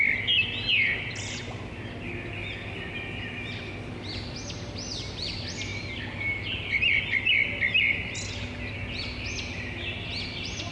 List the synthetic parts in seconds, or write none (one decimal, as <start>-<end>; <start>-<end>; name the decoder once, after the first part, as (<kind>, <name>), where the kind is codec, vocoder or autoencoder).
none